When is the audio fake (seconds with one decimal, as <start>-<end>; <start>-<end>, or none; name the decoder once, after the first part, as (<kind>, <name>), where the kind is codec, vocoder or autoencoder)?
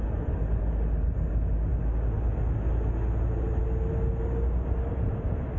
none